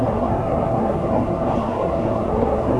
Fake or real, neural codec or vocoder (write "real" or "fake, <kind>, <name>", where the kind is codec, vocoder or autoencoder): fake, codec, SNAC